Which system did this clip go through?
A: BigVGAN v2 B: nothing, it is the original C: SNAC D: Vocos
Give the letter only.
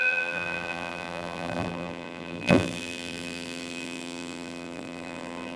A